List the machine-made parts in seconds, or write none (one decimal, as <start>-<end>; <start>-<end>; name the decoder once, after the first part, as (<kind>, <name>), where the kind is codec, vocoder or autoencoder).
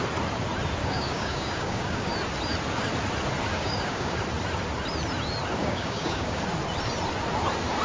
0.8-2.1 (codec, DAC); 3.5-4.2; 5.6-6.4